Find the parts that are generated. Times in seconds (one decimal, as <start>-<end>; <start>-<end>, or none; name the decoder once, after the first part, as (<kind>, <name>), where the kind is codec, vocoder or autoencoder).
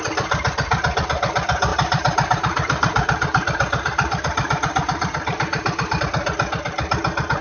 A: 1.7-6.0 (vocoder, BigVGAN v2)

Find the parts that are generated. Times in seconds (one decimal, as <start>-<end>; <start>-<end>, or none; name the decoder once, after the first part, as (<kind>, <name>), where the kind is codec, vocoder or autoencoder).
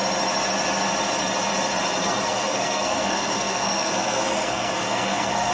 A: 2.0-5.5 (codec, SNAC)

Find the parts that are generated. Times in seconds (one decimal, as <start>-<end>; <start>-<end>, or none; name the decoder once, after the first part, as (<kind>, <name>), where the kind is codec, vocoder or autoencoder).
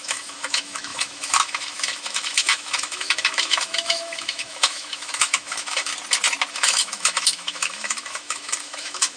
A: 0.0-5.9 (autoencoder, DAC-VAE); 6.5-9.2